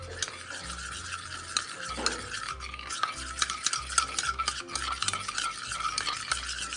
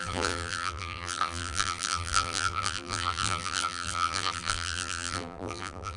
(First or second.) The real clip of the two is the first